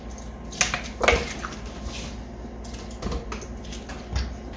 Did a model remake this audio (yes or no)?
no